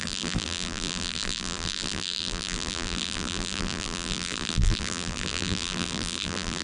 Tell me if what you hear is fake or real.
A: fake